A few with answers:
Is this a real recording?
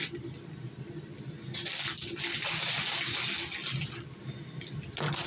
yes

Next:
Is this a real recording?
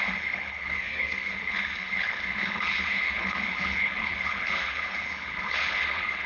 no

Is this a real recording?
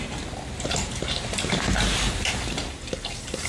yes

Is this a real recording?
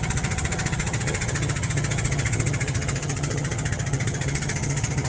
no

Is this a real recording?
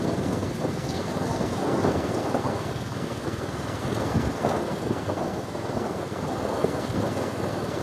no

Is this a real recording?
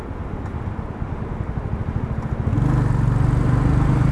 yes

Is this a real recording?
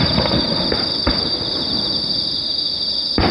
yes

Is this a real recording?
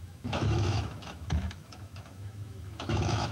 no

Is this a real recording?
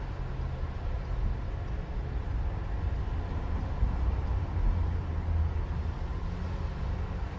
yes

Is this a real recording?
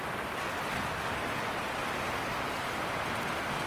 yes